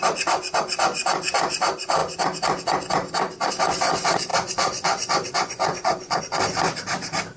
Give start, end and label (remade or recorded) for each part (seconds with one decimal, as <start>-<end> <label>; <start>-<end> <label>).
0.0-4.3 recorded; 4.3-6.2 remade; 6.2-7.4 recorded